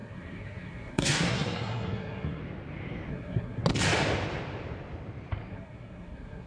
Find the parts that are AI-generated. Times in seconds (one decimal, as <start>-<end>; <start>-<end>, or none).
0.0-2.4; 3.1-3.6; 5.5-6.5